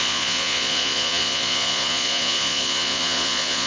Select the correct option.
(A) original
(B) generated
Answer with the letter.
B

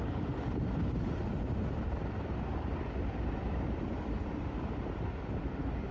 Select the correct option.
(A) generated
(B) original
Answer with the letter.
A